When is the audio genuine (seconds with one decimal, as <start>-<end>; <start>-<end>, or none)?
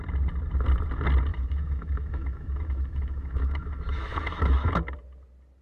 0.0-1.3; 4.7-5.6